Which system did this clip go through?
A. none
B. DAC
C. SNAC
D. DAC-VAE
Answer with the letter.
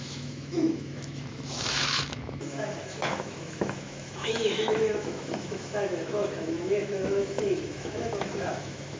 D